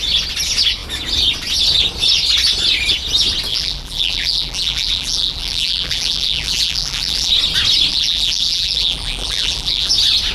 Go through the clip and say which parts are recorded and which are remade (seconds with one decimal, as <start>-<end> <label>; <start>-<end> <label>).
0.0-3.5 recorded; 3.5-7.3 remade; 7.3-7.9 recorded; 7.9-9.9 remade; 9.9-10.3 recorded